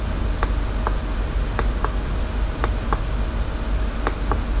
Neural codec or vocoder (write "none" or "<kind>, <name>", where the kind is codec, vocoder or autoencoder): none